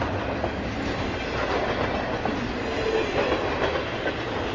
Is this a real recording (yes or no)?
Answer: yes